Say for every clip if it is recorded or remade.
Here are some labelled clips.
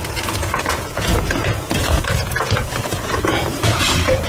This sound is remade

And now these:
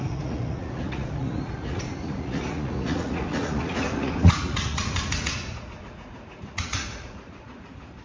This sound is remade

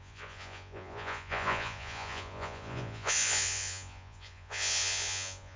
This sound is remade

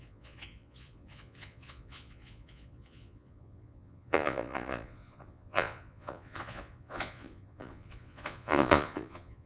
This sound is remade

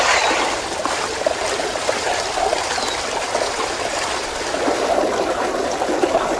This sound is recorded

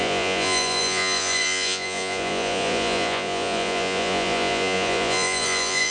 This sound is remade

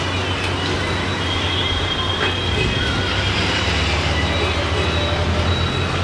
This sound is recorded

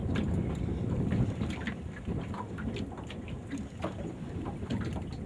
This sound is recorded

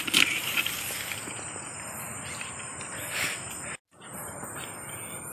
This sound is recorded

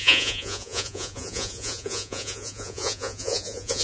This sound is remade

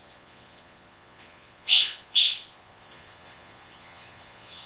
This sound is remade